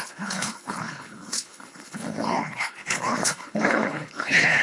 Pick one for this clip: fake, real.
fake